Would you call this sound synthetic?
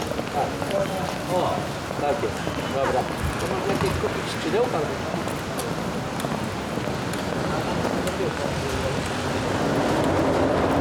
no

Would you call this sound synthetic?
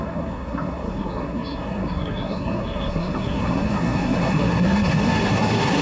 yes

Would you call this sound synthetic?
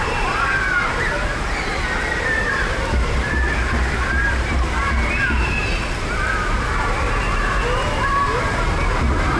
yes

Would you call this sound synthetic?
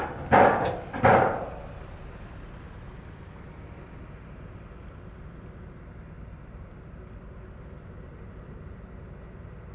no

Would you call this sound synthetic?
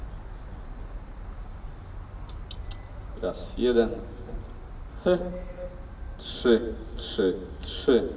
no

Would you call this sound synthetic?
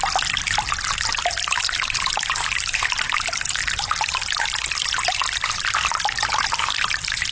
no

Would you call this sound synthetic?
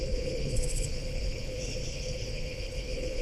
yes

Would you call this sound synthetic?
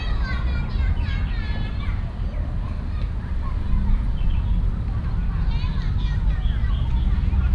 no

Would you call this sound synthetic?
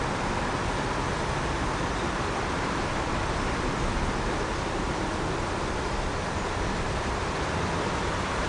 no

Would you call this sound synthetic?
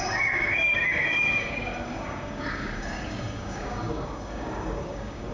yes